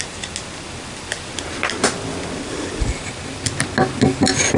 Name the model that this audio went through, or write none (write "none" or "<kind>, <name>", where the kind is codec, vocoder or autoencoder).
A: none